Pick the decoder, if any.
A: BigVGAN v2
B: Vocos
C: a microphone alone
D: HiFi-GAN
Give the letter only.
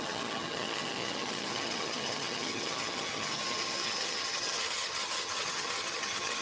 D